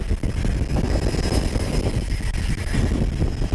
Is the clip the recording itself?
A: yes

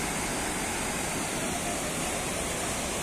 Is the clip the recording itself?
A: yes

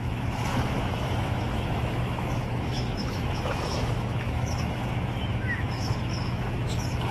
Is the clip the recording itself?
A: no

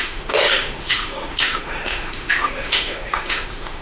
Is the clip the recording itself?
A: no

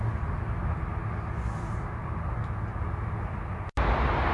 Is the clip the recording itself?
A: yes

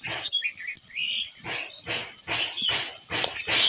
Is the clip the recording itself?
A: yes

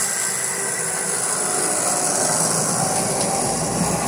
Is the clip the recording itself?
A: yes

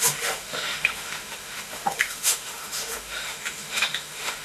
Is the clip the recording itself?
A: no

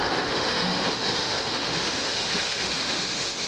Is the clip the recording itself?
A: no